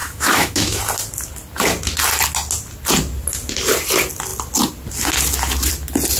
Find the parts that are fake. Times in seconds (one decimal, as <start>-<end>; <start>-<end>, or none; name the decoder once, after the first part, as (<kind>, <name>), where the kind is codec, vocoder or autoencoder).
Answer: 0.0-0.8 (autoencoder, DAC-VAE)